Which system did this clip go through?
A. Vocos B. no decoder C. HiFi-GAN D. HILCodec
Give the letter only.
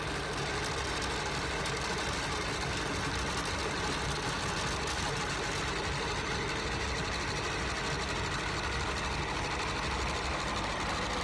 B